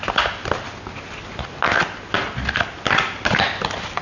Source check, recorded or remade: recorded